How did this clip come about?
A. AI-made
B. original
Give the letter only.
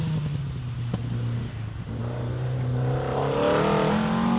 B